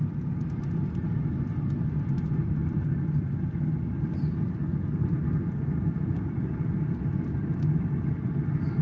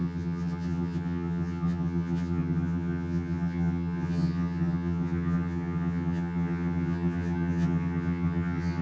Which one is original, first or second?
first